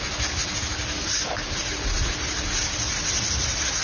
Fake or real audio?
real